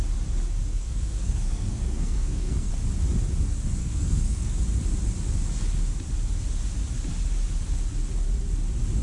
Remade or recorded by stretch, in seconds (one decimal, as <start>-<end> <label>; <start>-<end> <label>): 0.0-0.7 recorded; 0.7-2.7 remade; 2.7-3.8 recorded; 3.8-4.6 remade; 4.6-9.0 recorded